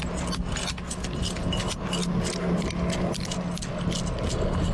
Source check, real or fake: real